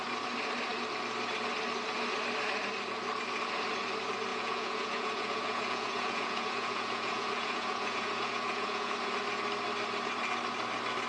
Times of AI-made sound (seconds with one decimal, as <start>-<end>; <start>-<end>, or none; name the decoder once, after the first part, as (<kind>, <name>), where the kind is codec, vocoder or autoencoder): 4.3-9.1 (vocoder, Vocos)